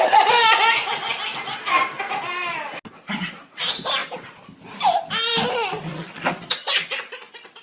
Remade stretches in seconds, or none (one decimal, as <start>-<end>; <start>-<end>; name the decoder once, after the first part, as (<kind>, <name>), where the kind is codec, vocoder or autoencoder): none